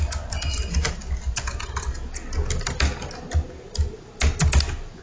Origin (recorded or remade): recorded